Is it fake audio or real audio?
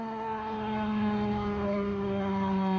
fake